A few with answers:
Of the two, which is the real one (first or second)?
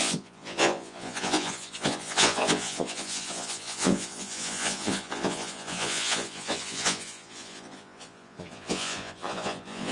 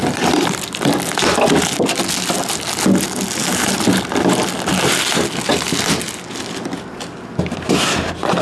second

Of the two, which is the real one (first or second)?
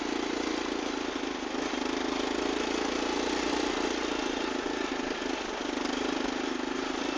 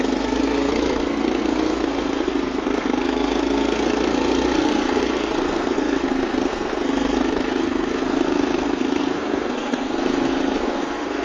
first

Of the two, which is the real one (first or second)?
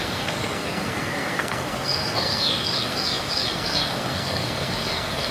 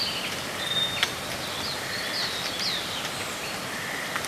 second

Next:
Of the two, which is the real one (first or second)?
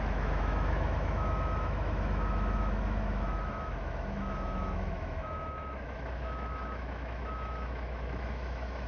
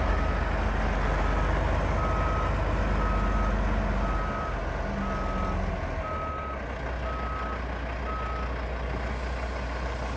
second